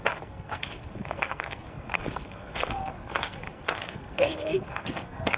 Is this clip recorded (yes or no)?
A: no